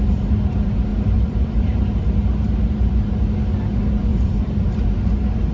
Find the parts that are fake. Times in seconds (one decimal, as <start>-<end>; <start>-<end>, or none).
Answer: 0.9-2.2; 4.1-5.5